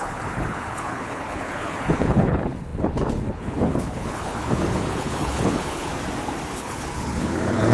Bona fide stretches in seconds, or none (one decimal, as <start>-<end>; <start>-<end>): 5.9-6.5